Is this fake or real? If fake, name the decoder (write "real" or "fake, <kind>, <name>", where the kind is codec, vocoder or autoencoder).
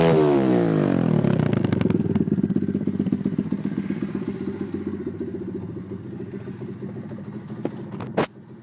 real